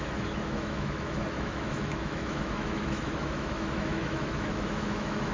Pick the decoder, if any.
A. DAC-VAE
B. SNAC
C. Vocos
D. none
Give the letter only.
A